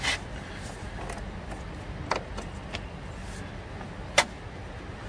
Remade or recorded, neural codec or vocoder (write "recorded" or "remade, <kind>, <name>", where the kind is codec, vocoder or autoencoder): recorded